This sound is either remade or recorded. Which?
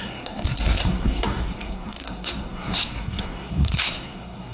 remade